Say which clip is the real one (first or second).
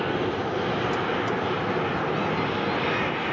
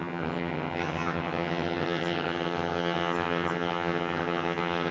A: first